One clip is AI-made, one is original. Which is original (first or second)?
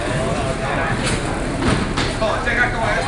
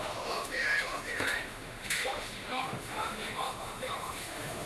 first